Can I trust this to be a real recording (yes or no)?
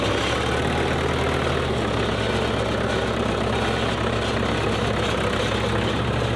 yes